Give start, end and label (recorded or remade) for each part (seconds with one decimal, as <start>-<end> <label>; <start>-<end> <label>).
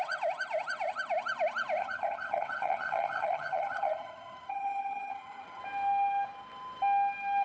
0.0-1.8 recorded; 1.8-5.6 remade; 5.6-7.4 recorded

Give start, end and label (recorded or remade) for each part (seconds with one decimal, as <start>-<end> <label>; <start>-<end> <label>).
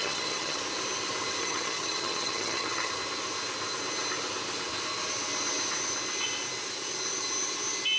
0.0-0.6 remade; 0.6-1.4 recorded; 1.4-2.9 remade; 2.9-8.0 recorded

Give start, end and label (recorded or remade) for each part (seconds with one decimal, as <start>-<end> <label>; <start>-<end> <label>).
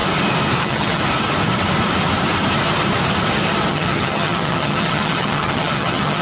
0.0-0.6 recorded; 0.6-1.0 remade; 1.0-3.7 recorded; 3.7-6.2 remade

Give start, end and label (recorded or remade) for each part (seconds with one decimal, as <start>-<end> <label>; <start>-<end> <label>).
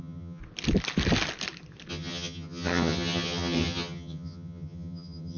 0.0-0.4 remade; 0.4-1.9 recorded; 1.9-5.4 remade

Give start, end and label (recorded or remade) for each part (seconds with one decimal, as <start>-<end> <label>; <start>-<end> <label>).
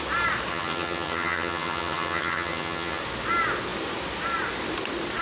0.0-0.5 recorded; 0.5-3.0 remade; 3.0-5.2 recorded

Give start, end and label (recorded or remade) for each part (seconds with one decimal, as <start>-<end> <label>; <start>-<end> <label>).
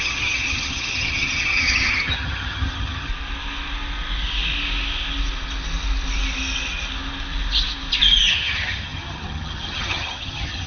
0.0-3.1 remade; 3.1-8.3 recorded; 8.3-10.7 remade